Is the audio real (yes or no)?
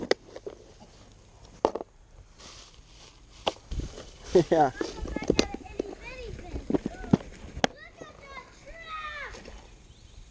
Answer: yes